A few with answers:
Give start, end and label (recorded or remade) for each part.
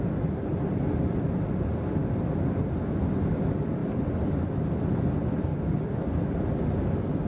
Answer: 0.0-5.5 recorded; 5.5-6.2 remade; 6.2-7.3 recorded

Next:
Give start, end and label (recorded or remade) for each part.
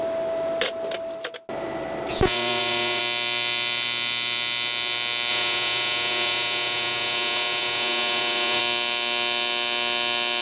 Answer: 0.0-2.1 recorded; 2.1-3.0 remade; 3.0-5.3 recorded; 5.3-8.6 remade; 8.6-10.4 recorded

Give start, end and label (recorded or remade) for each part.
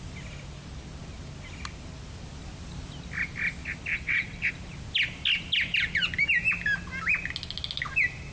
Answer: 0.0-3.9 recorded; 3.9-4.5 remade; 4.5-8.3 recorded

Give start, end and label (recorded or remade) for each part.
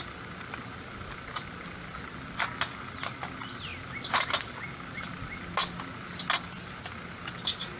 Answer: 0.0-7.8 recorded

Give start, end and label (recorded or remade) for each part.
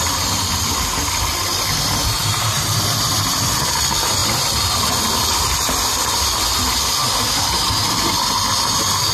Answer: 0.0-9.1 recorded